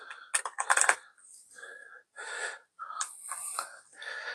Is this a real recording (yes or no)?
yes